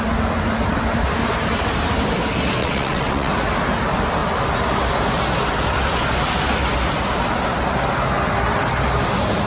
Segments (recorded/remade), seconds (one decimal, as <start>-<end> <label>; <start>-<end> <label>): 0.0-2.6 recorded; 2.6-3.3 remade; 3.3-9.5 recorded